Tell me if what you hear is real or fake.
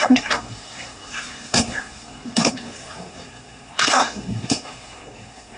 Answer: fake